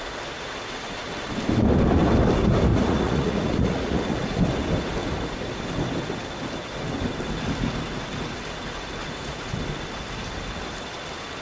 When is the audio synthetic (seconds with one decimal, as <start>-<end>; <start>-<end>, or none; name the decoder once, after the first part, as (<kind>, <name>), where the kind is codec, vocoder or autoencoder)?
2.7-4.4 (vocoder, Vocos); 5.0-5.6; 9.0-9.6